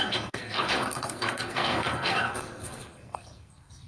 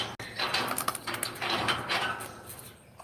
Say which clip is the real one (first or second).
second